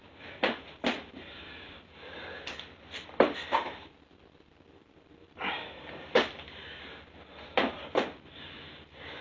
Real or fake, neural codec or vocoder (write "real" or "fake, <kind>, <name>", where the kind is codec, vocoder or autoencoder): fake, vocoder, BigVGAN v2